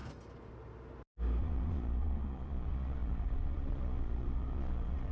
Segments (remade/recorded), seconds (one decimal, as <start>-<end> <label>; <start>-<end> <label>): 0.0-1.4 recorded; 1.4-5.1 remade